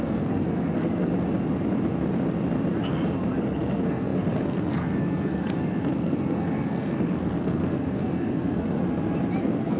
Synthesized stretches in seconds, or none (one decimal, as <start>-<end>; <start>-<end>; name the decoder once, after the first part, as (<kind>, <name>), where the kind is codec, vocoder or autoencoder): 0.0-1.1 (codec, SNAC); 3.4-8.8; 9.4-9.8

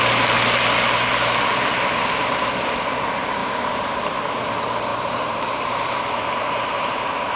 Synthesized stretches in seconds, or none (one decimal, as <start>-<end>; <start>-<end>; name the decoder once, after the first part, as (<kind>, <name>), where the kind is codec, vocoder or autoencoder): 3.4-3.9 (vocoder, BigVGAN v2); 4.9-7.4

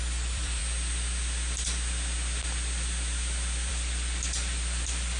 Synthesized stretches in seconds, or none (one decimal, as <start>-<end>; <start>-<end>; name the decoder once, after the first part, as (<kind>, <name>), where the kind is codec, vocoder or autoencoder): 0.0-0.6 (vocoder, BigVGAN v2); 3.7-5.2